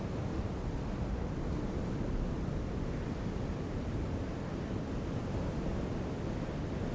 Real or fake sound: real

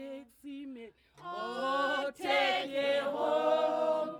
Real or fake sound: real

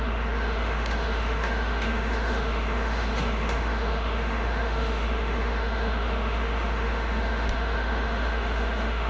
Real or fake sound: fake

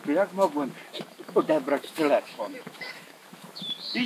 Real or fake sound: fake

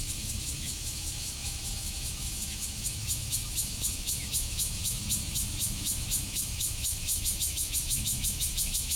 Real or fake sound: fake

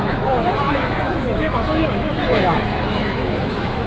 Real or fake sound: fake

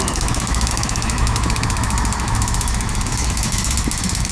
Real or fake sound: fake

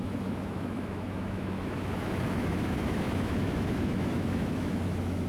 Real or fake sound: fake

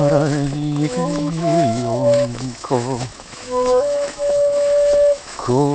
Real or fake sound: fake